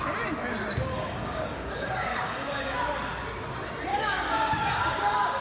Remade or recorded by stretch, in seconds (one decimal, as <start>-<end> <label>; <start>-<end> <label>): 0.0-0.9 recorded; 0.9-2.8 remade; 2.8-3.9 recorded; 3.9-5.4 remade